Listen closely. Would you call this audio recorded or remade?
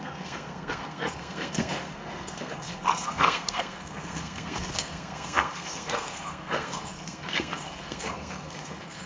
remade